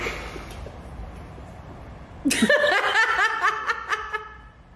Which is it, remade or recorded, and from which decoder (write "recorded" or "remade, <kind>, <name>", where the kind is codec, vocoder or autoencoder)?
recorded